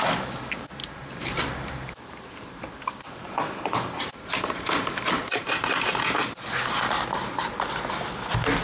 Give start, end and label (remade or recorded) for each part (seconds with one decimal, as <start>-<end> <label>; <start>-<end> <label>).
0.0-0.8 recorded; 0.8-5.9 remade; 5.9-8.6 recorded